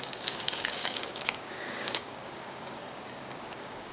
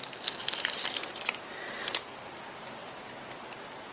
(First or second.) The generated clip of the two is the first